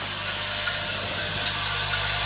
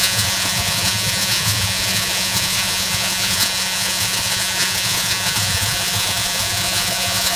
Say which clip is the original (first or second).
first